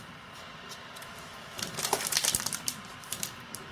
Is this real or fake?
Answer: fake